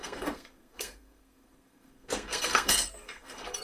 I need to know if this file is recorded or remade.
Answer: remade